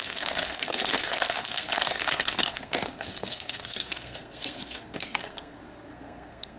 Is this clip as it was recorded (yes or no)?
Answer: no